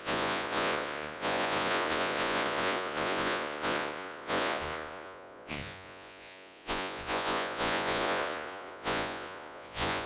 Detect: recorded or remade remade